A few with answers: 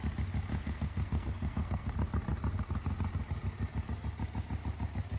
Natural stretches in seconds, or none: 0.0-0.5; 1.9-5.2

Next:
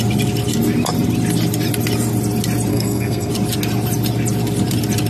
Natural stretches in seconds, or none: 0.0-2.7; 3.3-5.1

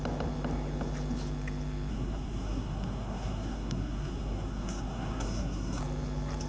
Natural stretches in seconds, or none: 0.0-1.9; 5.8-6.5

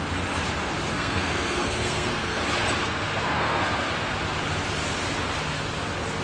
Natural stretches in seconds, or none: 0.0-0.9; 2.4-2.8; 3.9-6.2

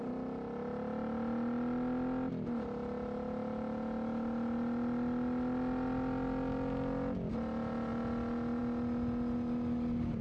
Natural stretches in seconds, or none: 0.0-10.2